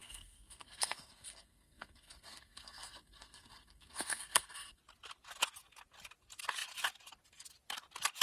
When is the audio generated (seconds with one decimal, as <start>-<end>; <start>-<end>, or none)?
0.0-4.8